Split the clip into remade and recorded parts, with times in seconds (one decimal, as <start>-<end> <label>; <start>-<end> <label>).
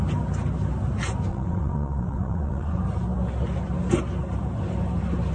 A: 0.0-1.3 recorded; 1.3-2.8 remade; 2.8-5.3 recorded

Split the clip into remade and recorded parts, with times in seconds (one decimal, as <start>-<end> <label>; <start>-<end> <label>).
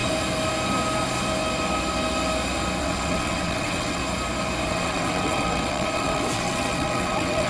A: 0.0-2.8 recorded; 2.8-4.0 remade; 4.0-4.7 recorded; 4.7-7.5 remade